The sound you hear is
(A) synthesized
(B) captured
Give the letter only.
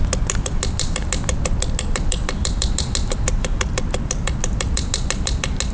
B